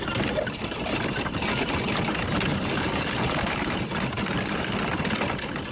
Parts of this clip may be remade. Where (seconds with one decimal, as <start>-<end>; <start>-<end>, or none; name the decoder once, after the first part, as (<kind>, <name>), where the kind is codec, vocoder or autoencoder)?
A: 2.5-4.7 (vocoder, BigVGAN v2)